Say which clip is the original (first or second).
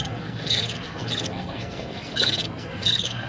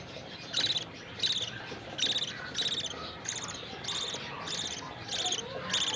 second